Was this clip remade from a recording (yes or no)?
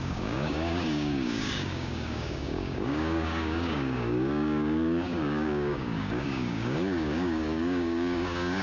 yes